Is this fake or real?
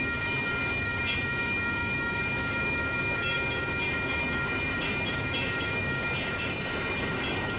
fake